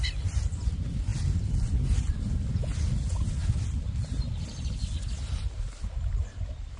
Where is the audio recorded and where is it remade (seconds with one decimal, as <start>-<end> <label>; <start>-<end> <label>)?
0.0-6.8 recorded